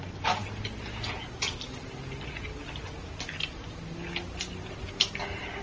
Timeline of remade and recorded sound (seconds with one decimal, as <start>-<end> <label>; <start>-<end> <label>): 0.0-3.0 recorded; 3.0-4.7 remade; 4.7-5.6 recorded